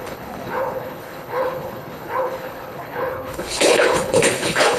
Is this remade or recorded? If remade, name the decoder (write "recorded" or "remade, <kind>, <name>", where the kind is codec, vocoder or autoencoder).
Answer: remade, codec, HILCodec